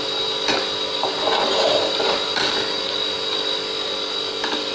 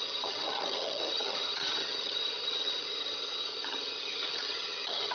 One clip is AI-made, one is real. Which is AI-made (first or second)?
second